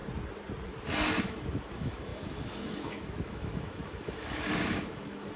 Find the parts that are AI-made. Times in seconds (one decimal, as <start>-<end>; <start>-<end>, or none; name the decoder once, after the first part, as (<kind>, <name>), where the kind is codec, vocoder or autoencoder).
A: 1.2-5.4 (autoencoder, DAC-VAE)